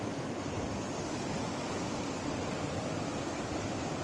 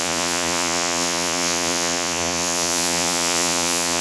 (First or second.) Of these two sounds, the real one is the first